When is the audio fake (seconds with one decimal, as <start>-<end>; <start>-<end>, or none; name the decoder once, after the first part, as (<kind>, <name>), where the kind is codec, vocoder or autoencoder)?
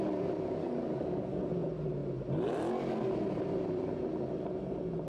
0.6-1.5 (codec, DAC)